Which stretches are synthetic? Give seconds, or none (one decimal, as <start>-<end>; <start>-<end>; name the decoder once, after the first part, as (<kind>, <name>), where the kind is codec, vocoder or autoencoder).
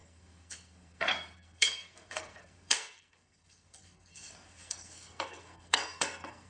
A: 0.0-6.5 (codec, SNAC)